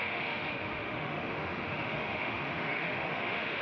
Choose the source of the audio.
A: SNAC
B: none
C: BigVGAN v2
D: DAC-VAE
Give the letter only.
D